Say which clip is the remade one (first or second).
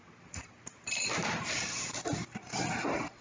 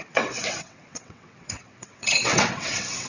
second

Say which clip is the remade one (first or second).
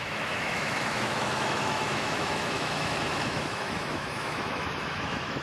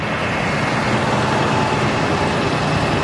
first